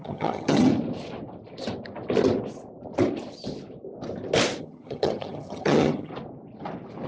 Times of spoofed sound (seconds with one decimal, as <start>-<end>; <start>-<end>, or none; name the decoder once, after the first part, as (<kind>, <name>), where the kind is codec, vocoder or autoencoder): 0.0-0.7 (vocoder, HiFi-GAN); 4.6-6.1